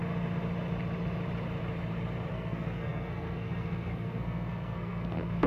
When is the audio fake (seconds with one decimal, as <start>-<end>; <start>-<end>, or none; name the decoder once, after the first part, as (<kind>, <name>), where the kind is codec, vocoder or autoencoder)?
2.3-5.5 (codec, SNAC)